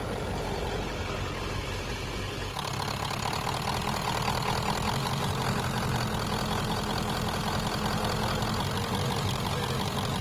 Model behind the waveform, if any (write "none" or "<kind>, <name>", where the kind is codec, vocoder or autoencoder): none